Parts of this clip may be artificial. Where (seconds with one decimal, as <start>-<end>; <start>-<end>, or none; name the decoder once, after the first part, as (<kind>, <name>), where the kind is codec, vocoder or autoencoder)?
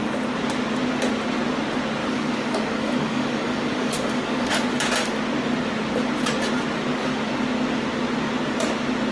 2.0-4.5 (codec, DAC)